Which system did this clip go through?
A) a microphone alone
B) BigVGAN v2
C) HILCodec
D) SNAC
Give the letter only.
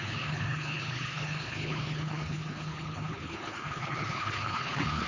C